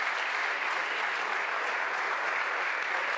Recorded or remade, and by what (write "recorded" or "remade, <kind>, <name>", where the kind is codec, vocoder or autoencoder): recorded